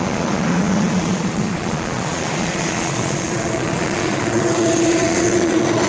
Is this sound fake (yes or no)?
yes